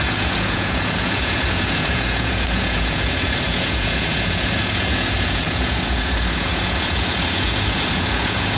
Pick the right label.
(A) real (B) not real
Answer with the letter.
B